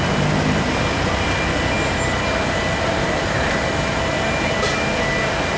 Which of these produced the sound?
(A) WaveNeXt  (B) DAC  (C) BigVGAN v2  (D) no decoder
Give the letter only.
D